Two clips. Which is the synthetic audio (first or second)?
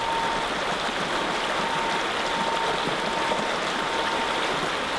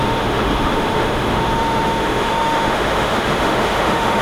second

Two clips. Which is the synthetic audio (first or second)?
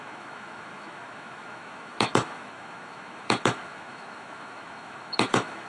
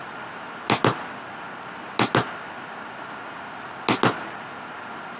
first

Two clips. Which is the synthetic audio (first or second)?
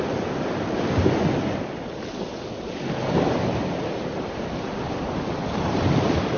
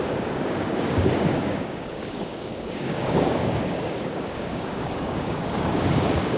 second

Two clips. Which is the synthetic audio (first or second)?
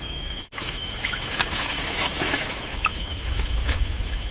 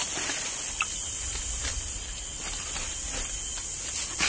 first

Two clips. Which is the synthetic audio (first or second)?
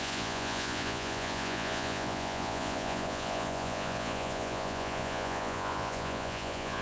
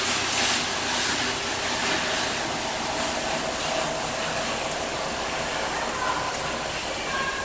first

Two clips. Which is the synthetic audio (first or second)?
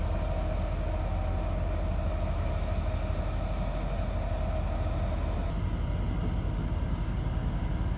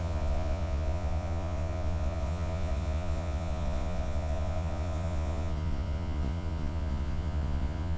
second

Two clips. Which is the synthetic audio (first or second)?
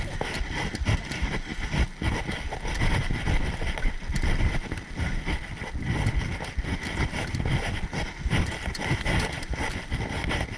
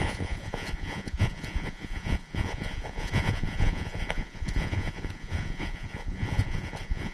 second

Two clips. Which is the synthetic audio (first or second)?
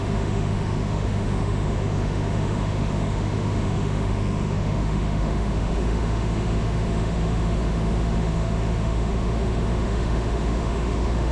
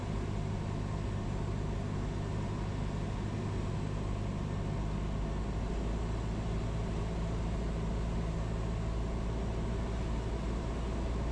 first